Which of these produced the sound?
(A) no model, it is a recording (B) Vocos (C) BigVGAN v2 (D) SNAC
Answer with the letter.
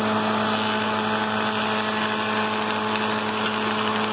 A